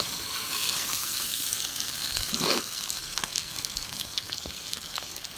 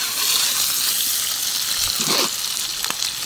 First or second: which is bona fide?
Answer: second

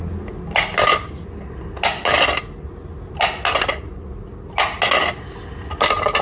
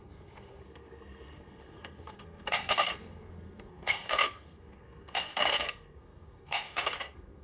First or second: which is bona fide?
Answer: first